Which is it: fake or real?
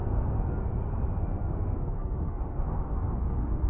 fake